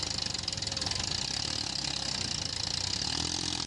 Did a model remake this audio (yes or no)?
no